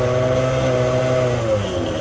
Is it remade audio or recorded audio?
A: recorded